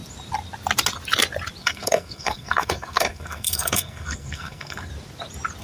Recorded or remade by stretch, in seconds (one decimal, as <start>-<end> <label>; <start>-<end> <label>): 0.0-1.6 recorded; 1.6-4.9 remade; 4.9-5.6 recorded